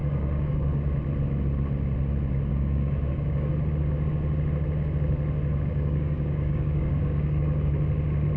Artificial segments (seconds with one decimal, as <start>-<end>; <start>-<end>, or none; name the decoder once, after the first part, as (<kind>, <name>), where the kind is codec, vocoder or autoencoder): 0.0-0.8 (codec, DAC); 2.5-3.5; 5.7-7.7